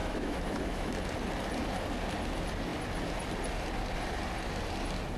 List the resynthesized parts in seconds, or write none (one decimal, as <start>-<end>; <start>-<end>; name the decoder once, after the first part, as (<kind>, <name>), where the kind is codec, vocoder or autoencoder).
0.0-0.9 (autoencoder, DAC-VAE)